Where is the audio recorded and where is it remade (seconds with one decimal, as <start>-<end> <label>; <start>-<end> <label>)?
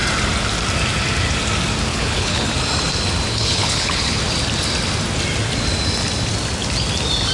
0.0-1.9 recorded; 1.9-2.5 remade; 2.5-3.3 recorded; 3.3-4.2 remade; 4.2-7.3 recorded